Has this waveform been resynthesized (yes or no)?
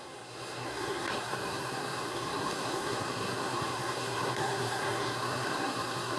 yes